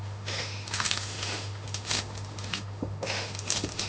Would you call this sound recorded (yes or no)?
no